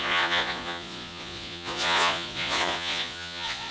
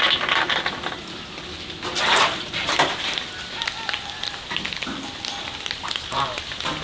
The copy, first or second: first